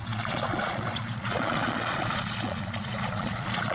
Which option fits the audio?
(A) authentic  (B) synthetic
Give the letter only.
B